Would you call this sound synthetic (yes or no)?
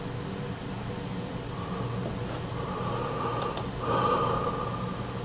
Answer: no